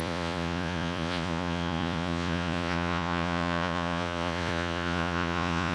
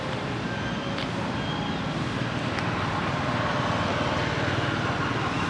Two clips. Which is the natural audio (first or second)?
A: second